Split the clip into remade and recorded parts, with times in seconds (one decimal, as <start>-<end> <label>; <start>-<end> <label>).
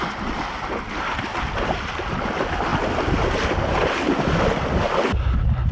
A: 0.0-5.7 recorded